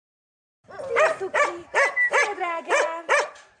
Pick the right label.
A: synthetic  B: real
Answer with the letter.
A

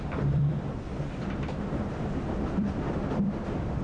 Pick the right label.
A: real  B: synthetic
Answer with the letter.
B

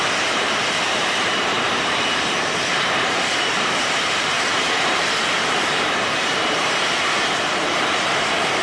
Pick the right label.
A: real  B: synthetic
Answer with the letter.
B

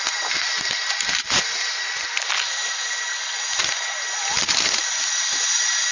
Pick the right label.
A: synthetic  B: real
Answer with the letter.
B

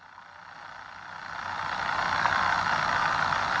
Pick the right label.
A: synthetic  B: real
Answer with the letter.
B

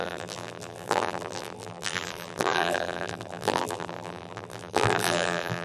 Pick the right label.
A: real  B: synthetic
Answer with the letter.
B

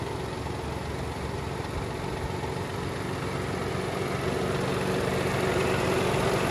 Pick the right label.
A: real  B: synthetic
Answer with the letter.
A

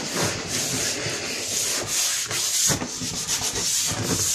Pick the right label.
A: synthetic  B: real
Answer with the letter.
B